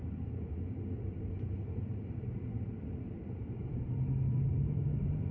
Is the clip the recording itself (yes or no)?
no